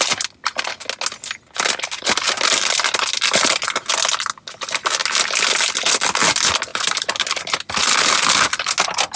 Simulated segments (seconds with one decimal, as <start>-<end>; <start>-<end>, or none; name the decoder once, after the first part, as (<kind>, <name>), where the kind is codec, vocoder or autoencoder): none